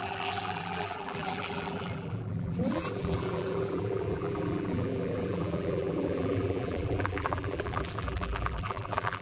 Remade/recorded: remade